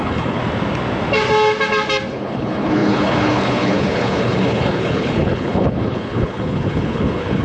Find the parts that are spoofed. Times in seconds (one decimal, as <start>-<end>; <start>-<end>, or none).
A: 0.0-0.4; 2.1-7.4